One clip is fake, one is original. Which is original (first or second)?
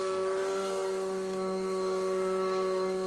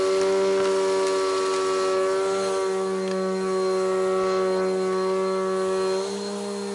second